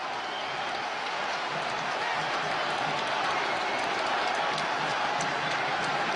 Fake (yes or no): no